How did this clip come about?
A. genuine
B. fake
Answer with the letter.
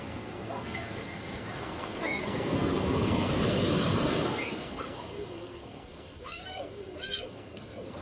B